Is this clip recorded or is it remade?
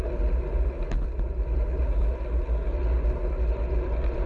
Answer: recorded